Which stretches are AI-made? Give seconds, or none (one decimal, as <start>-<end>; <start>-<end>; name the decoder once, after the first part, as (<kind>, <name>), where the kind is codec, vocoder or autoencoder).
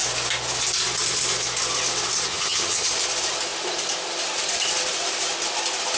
2.3-2.9 (vocoder, HiFi-GAN)